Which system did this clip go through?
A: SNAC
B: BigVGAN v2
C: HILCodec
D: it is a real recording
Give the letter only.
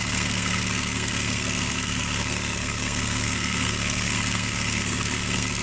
A